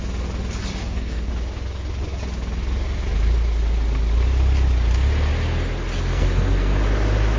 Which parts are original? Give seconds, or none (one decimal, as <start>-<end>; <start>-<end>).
0.0-0.8; 1.3-6.1; 6.8-7.4